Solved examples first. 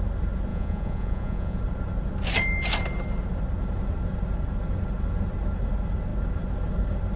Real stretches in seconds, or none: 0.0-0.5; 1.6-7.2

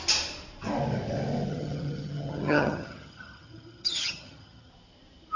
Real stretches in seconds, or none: 0.0-1.5; 4.7-5.4

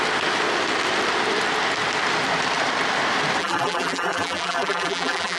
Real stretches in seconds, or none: 0.0-3.4

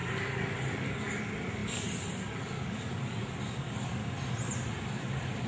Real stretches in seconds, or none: 4.0-4.9